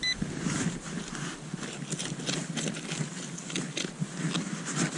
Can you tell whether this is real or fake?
real